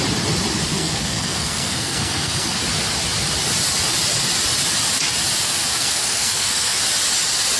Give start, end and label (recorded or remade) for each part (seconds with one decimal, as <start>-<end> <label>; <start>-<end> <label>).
0.0-0.7 recorded; 0.7-2.6 remade; 2.6-5.8 recorded; 5.8-6.8 remade; 6.8-7.6 recorded